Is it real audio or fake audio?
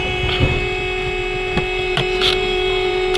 fake